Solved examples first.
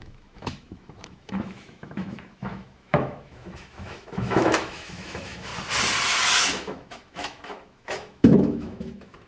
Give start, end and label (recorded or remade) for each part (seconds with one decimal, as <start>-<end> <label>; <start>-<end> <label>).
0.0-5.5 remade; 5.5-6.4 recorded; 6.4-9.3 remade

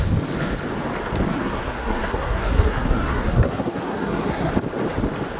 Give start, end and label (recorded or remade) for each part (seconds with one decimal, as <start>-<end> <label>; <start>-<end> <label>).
0.0-1.3 recorded; 1.3-4.5 remade; 4.5-5.4 recorded

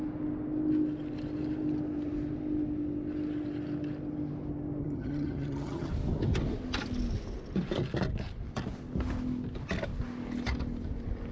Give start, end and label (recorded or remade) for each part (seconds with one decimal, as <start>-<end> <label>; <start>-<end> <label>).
0.0-4.8 recorded; 4.8-5.9 remade; 5.9-11.3 recorded

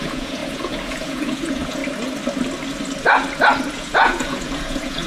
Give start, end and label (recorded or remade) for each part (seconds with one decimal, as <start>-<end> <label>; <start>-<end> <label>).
0.0-1.8 remade; 1.8-3.7 recorded; 3.7-5.1 remade

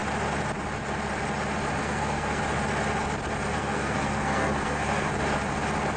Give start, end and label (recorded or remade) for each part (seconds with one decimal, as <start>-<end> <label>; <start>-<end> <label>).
0.0-1.8 recorded; 1.8-2.4 remade; 2.4-3.5 recorded; 3.5-5.1 remade; 5.1-6.0 recorded